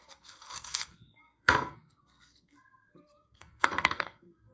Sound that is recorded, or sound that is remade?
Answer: remade